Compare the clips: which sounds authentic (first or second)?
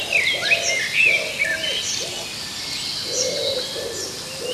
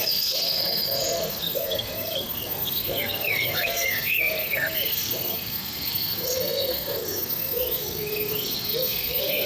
first